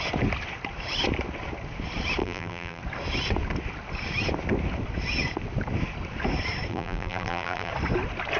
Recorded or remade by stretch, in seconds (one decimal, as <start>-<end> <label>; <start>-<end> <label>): 0.0-2.2 recorded; 2.2-2.8 remade; 2.8-6.7 recorded; 6.7-7.7 remade; 7.7-8.4 recorded